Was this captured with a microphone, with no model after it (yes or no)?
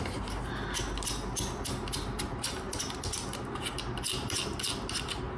yes